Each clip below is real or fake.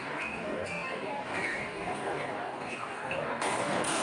fake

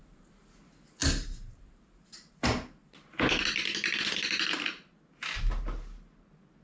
real